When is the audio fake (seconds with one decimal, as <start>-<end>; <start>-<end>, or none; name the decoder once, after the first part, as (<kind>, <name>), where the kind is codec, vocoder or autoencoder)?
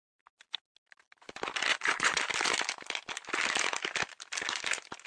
1.7-2.2 (vocoder, Vocos)